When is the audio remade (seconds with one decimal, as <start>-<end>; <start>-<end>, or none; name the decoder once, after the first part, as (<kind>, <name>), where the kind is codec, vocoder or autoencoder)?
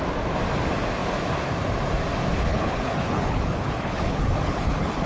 2.5-5.1 (codec, HILCodec)